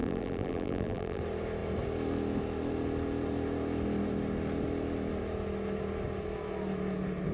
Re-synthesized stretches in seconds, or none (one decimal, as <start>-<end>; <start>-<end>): 0.0-1.2